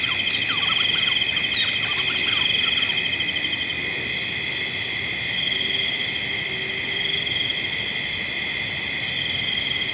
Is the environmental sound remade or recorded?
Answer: recorded